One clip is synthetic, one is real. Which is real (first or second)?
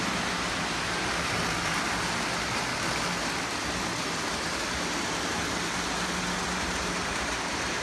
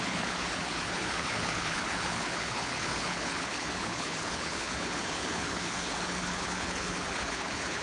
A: first